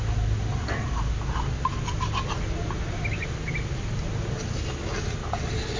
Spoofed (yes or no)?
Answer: no